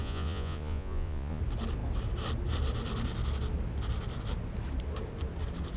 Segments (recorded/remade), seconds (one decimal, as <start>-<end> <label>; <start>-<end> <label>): 0.0-1.4 remade; 1.4-5.8 recorded